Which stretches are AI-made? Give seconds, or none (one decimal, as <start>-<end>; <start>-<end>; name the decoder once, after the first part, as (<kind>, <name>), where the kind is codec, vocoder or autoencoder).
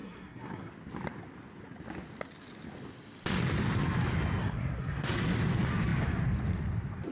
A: 0.0-0.7 (codec, SNAC); 4.4-5.4